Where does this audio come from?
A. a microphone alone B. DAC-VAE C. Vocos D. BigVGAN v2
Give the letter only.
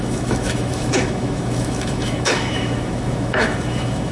B